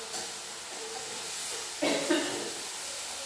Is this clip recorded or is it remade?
recorded